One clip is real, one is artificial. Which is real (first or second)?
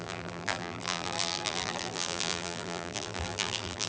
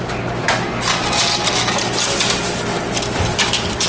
second